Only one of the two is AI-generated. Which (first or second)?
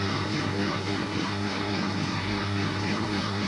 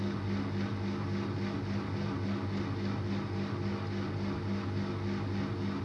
first